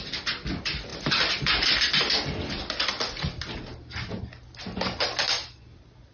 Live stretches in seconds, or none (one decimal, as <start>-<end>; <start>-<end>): 0.0-6.1